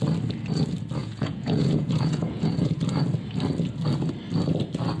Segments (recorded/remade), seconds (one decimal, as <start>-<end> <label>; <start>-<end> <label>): 0.0-1.0 recorded; 1.0-2.7 remade; 2.7-5.0 recorded